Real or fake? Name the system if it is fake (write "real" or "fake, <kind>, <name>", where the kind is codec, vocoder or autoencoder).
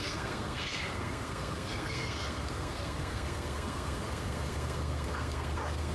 fake, codec, SNAC